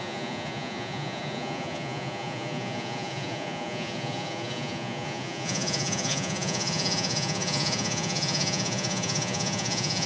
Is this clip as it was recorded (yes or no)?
no